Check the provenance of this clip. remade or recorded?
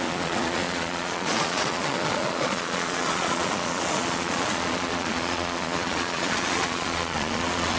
remade